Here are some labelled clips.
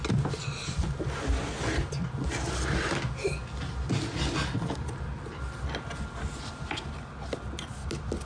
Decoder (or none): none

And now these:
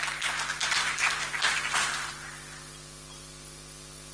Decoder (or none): none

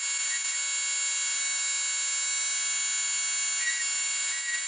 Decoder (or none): none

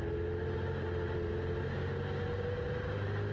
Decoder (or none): none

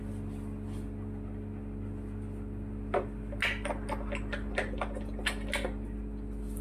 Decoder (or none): none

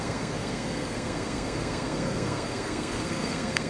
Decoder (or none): codec, SNAC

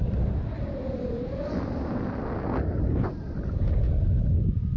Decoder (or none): none